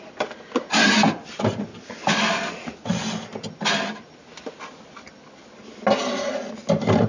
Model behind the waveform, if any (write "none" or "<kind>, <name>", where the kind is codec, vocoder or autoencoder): none